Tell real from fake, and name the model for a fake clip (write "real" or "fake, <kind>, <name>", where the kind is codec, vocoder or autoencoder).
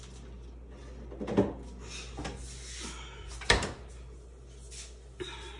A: real